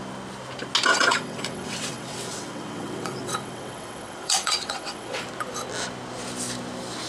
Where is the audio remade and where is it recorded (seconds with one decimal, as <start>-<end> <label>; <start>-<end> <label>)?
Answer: 0.0-0.9 recorded; 0.9-5.2 remade; 5.2-7.1 recorded